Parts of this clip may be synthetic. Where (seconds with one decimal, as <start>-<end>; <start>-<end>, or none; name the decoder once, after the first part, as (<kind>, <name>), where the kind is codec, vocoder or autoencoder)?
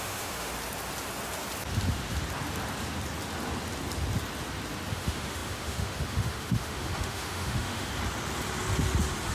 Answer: 0.0-0.5 (autoencoder, DAC-VAE); 4.9-7.9